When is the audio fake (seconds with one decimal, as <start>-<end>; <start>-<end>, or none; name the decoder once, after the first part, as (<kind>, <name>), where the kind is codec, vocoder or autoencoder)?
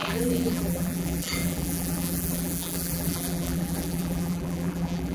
0.0-5.1 (vocoder, BigVGAN v2)